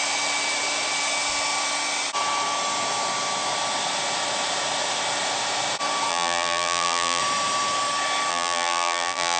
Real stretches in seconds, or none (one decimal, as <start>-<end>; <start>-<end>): 0.0-6.1; 7.2-8.3